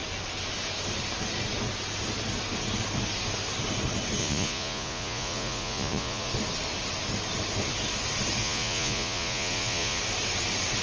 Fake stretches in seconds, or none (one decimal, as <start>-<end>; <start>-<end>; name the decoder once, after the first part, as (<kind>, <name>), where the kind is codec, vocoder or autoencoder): 4.2-6.3 (vocoder, Vocos); 8.4-10.0